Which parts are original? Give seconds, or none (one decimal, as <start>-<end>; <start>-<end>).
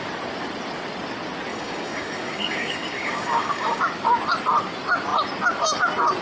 0.0-1.5; 3.8-6.2